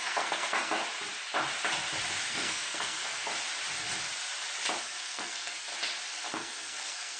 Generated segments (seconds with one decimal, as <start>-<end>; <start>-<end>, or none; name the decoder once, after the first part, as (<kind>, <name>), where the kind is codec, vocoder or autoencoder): 0.0-0.8 (codec, SNAC); 2.3-3.3; 4.8-5.7; 6.3-7.2